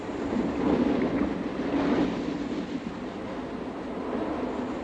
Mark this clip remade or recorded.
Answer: recorded